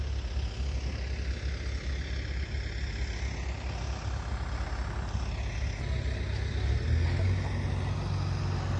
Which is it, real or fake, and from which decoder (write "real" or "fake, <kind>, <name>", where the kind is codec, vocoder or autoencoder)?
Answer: real